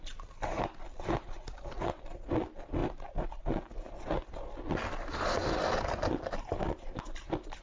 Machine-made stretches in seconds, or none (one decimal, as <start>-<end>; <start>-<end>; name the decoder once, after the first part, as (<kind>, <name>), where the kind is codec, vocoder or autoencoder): none